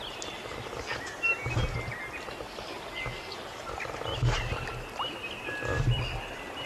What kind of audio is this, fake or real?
real